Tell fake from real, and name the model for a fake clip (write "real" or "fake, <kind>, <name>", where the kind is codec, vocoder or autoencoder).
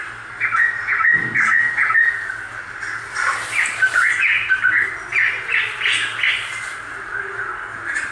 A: real